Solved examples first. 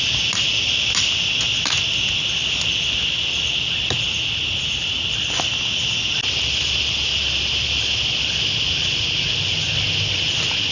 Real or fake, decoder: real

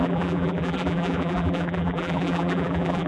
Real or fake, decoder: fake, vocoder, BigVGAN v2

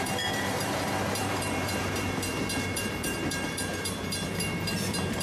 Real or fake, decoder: fake, vocoder, BigVGAN v2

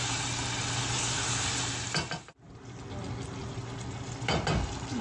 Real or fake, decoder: real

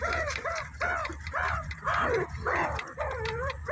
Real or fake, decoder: fake, vocoder, BigVGAN v2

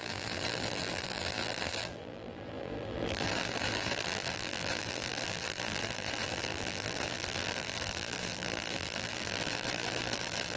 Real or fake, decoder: fake, vocoder, BigVGAN v2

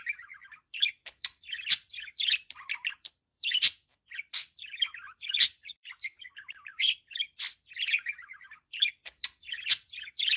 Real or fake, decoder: fake, vocoder, BigVGAN v2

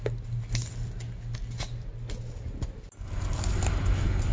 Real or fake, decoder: real